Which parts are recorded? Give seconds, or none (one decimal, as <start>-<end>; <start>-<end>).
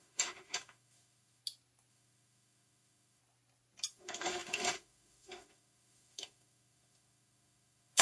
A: 1.4-1.9; 3.2-3.9